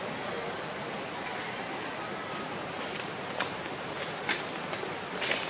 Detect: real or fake real